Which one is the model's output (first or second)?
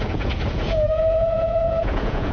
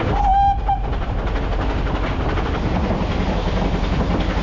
first